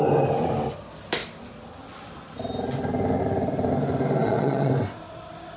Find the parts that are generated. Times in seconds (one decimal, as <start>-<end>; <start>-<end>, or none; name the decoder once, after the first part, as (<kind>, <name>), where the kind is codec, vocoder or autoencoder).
4.2-4.7 (vocoder, Vocos)